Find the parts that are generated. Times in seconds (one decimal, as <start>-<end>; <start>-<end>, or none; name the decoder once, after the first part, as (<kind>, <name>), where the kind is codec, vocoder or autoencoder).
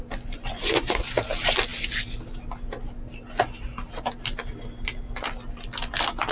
0.5-1.2 (vocoder, Vocos)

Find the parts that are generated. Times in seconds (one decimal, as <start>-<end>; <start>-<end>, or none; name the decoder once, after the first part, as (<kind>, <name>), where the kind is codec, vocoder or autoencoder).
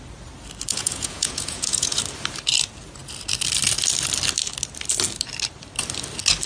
0.7-2.0 (vocoder, Vocos)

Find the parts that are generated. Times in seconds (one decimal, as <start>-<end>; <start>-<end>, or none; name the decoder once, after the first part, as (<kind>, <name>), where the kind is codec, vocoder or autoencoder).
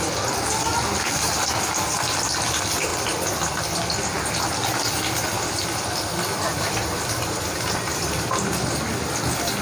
none